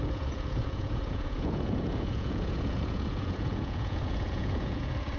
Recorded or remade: remade